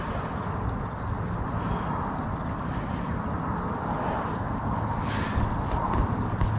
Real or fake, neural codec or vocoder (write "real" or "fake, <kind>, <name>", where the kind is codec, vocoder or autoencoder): real